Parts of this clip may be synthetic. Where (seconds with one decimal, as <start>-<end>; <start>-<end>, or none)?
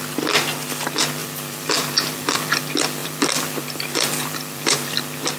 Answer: 1.2-2.6; 3.0-5.0